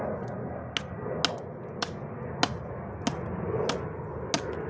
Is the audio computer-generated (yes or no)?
no